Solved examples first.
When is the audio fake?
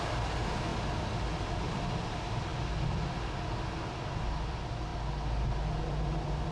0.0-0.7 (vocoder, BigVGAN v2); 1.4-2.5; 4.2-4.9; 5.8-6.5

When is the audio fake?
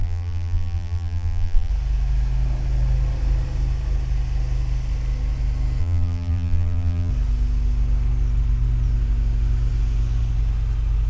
0.0-1.7 (vocoder, BigVGAN v2); 5.8-7.1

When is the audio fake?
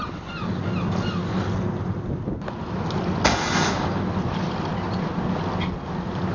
none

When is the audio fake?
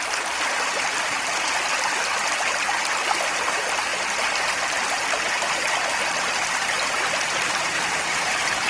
0.0-3.9 (vocoder, BigVGAN v2); 4.9-8.7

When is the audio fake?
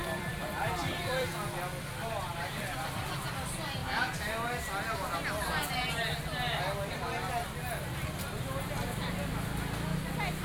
0.0-1.3 (vocoder, BigVGAN v2)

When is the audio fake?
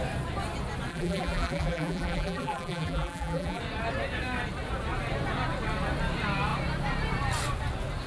0.9-3.6 (vocoder, BigVGAN v2)